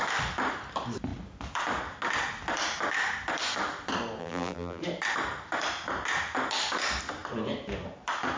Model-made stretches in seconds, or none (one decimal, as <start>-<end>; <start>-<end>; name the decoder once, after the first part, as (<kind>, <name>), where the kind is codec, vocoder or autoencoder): 4.2-4.8 (vocoder, BigVGAN v2)